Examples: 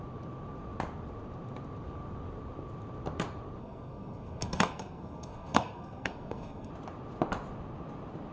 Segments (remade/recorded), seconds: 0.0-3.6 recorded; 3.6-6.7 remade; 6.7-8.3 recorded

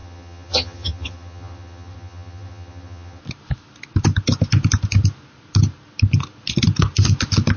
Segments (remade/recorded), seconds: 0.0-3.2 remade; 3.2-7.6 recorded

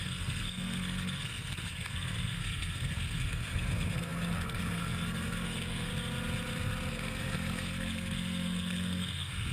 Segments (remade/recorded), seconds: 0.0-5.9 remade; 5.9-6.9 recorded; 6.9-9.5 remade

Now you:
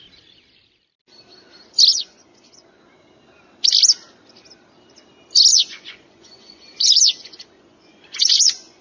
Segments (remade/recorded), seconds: 0.0-1.9 recorded; 1.9-2.8 remade; 2.8-5.5 recorded; 5.5-8.8 remade

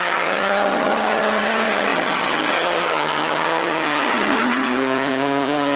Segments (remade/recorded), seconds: 0.0-5.8 remade

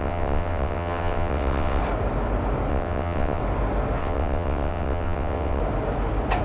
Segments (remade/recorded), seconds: 0.0-1.8 remade; 1.8-2.7 recorded; 2.7-3.4 remade; 3.4-4.0 recorded; 4.0-5.6 remade; 5.6-6.4 recorded

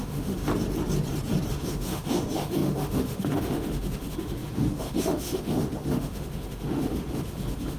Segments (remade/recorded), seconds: 0.0-0.5 remade; 0.5-1.5 recorded; 1.5-7.8 remade

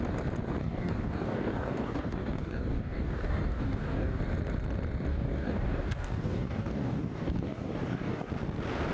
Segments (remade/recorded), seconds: 0.0-0.6 recorded; 0.6-4.2 remade; 4.2-5.1 recorded; 5.1-8.3 remade; 8.3-8.9 recorded